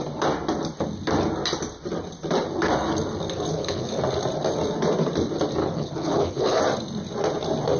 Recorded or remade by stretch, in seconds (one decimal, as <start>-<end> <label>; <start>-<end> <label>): 0.0-3.5 recorded; 3.5-4.0 remade; 4.0-5.6 recorded; 5.6-6.6 remade; 6.6-7.8 recorded